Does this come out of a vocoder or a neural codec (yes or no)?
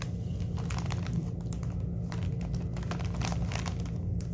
no